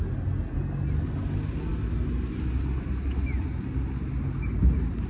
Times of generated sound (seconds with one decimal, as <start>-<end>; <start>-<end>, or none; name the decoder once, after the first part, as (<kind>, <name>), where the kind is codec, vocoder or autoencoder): none